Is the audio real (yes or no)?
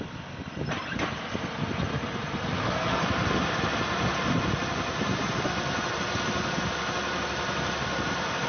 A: yes